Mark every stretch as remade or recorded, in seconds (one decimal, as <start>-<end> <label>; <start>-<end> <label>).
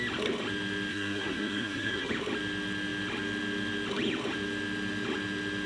0.0-0.9 recorded; 0.9-2.1 remade; 2.1-5.7 recorded